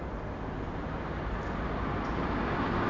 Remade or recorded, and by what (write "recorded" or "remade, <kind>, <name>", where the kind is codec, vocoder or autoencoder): recorded